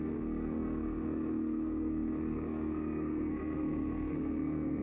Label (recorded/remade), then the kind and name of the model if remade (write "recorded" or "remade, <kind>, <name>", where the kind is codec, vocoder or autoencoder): remade, codec, SNAC